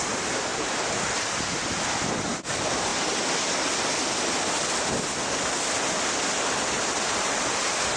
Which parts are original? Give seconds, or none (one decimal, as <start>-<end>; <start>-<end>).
0.0-0.5; 1.2-8.0